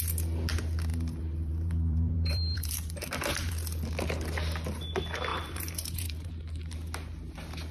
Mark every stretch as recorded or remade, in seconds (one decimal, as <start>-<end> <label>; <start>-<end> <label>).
0.0-0.9 recorded; 0.9-3.5 remade; 3.5-5.3 recorded; 5.3-6.3 remade; 6.3-7.7 recorded